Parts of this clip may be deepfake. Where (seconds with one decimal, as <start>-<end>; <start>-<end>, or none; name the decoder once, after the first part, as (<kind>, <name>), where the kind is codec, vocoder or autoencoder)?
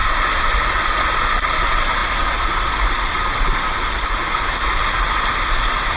none